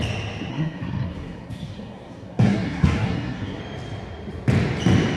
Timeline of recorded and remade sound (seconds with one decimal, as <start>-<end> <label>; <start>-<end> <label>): 0.0-0.5 recorded; 0.5-3.6 remade; 3.6-5.2 recorded